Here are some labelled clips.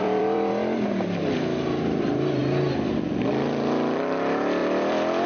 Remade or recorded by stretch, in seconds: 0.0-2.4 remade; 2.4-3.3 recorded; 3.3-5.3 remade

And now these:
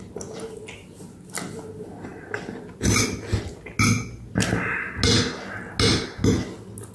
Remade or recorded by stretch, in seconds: 0.0-6.9 recorded

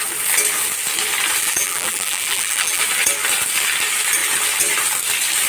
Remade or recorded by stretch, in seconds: 0.0-1.4 recorded; 1.4-2.8 remade; 2.8-5.5 recorded

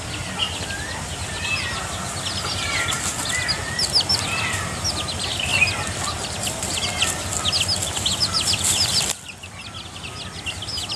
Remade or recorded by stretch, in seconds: 0.0-11.0 recorded

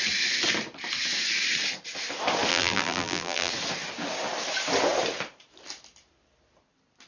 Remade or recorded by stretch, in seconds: 0.0-2.5 recorded; 2.5-3.5 remade; 3.5-7.1 recorded